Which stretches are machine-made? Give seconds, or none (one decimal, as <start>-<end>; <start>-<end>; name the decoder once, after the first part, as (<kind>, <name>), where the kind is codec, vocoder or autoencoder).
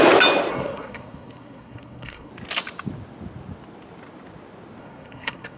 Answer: 0.5-2.3 (codec, SNAC); 4.8-5.6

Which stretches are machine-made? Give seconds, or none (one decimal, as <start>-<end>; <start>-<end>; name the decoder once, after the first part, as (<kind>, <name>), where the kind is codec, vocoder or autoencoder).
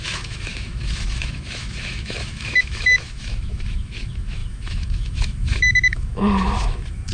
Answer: 0.0-7.1 (autoencoder, DAC-VAE)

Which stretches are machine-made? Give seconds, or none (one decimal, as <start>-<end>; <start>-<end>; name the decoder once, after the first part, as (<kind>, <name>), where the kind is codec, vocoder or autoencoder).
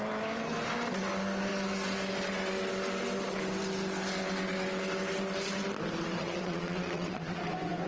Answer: 6.2-7.4 (vocoder, WaveNeXt)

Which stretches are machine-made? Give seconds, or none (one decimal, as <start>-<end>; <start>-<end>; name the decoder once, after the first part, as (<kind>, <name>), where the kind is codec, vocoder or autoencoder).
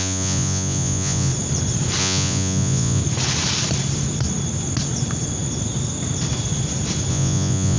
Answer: 0.0-1.3 (vocoder, Vocos); 2.0-3.0; 7.1-7.8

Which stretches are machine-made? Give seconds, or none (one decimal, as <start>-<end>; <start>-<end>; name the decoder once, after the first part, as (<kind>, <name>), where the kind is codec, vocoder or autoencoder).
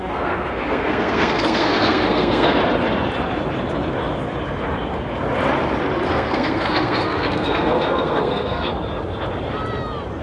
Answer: 0.0-2.6 (codec, SNAC); 6.1-8.7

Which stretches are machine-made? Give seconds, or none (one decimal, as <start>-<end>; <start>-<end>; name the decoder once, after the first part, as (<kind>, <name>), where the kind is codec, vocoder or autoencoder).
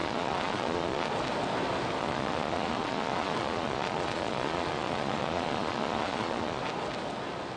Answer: 0.0-1.1 (vocoder, Vocos); 2.0-6.6